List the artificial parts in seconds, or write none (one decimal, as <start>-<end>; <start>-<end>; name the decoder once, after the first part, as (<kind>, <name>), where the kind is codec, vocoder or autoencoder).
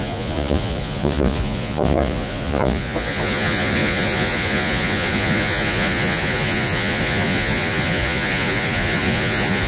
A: 0.0-9.7 (vocoder, Vocos)